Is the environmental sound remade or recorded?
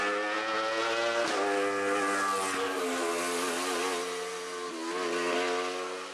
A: recorded